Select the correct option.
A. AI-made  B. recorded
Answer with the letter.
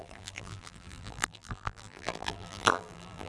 A